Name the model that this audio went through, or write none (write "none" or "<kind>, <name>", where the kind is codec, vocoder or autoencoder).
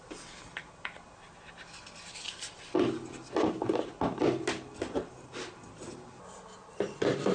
none